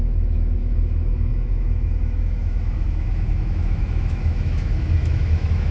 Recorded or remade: remade